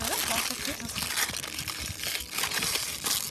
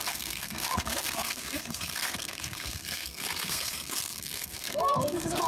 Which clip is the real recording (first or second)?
first